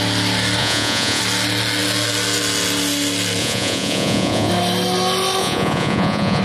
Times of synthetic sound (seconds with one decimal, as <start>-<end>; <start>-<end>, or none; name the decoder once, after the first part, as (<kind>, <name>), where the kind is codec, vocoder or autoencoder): 0.6-1.2 (vocoder, Vocos); 3.4-4.5; 5.4-6.4